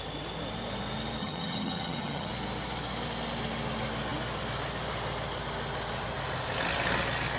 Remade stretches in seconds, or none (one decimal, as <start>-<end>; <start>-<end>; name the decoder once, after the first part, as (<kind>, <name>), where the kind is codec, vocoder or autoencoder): 1.2-2.3 (vocoder, HiFi-GAN)